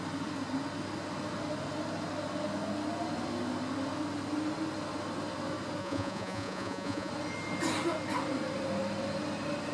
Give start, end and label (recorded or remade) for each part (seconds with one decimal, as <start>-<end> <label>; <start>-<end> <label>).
0.0-5.8 recorded; 5.8-7.1 remade; 7.1-9.7 recorded